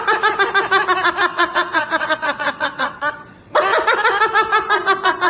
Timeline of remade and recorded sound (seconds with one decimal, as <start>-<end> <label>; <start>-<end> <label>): 0.0-1.3 recorded; 1.3-3.6 remade; 3.6-5.3 recorded